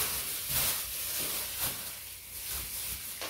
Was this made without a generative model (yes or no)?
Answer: yes